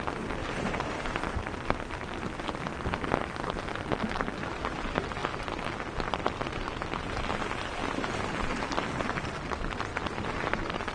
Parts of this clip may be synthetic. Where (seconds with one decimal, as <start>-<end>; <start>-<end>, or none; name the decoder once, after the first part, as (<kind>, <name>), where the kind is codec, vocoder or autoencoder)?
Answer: 0.4-1.8 (vocoder, BigVGAN v2); 7.8-8.5; 9.9-10.9